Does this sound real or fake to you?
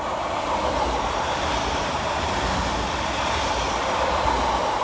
real